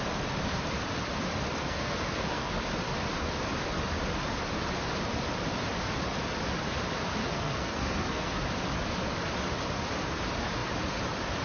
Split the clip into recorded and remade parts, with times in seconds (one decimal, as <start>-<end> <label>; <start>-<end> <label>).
0.0-1.6 recorded; 1.6-2.5 remade; 2.5-7.2 recorded; 7.2-8.3 remade; 8.3-11.4 recorded